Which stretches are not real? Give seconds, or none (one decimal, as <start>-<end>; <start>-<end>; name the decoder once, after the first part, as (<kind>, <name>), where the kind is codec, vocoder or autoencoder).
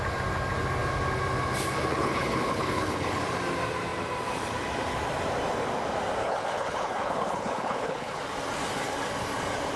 1.9-3.2 (codec, HILCodec); 6.2-8.2